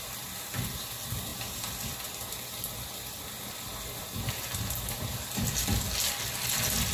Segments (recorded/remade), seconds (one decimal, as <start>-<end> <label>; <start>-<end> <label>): 0.0-6.9 recorded